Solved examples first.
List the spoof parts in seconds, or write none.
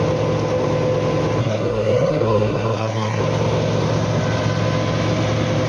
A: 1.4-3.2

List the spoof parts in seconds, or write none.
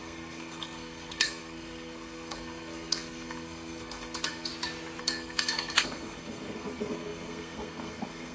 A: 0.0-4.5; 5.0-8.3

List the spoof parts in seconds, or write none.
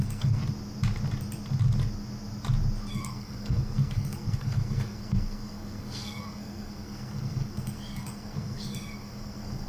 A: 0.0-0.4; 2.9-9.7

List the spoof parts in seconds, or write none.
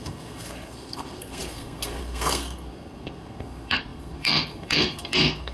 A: 0.0-5.5